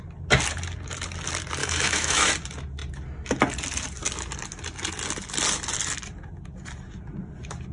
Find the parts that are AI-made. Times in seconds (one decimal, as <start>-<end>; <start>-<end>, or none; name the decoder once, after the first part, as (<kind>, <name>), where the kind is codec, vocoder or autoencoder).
1.6-2.3 (autoencoder, DAC-VAE)